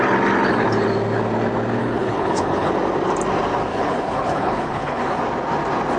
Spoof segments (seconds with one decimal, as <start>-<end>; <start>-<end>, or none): 1.8-2.7; 3.7-5.2